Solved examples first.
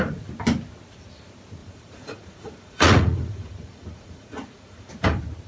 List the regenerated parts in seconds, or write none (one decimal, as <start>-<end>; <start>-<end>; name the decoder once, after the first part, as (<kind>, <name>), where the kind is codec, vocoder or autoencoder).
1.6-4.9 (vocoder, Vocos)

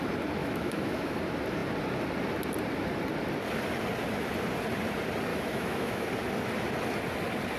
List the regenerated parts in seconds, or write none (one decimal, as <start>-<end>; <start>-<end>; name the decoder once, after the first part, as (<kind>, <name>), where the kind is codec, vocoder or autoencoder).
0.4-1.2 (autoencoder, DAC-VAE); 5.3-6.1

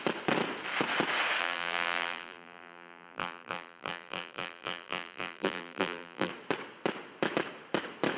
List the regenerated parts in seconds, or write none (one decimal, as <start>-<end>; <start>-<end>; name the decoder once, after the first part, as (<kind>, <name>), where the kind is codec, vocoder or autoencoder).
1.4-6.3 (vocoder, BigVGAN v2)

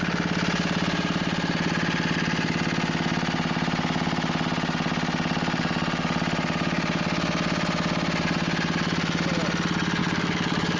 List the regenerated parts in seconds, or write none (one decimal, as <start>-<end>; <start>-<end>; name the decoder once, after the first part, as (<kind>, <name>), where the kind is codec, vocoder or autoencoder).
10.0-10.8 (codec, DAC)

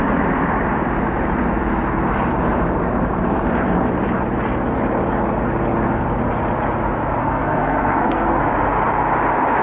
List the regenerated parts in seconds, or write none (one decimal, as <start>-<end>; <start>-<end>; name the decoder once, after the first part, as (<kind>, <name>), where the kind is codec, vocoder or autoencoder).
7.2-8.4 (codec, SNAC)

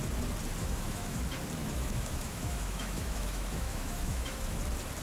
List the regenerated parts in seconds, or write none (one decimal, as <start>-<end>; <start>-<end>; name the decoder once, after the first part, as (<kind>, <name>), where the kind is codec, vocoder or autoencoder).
0.6-1.2 (autoencoder, DAC-VAE); 1.6-4.6

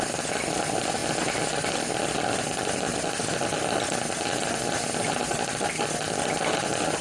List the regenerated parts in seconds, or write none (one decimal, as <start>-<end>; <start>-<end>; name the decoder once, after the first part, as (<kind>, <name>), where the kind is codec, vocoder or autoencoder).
none

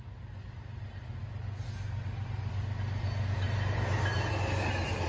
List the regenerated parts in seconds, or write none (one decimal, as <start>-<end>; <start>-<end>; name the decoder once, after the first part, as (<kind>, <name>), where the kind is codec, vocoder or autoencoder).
none